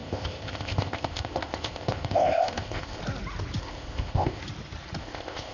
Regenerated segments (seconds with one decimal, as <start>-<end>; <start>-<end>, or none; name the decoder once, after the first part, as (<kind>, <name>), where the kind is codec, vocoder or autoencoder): 0.0-3.0 (codec, ZipCodec); 3.6-4.4; 5.0-5.5